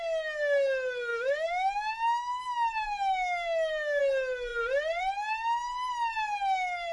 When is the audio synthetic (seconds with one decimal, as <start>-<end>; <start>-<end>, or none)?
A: 1.1-4.0